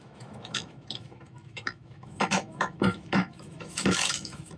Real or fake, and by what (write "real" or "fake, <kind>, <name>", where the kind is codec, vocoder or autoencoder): fake, autoencoder, DAC-VAE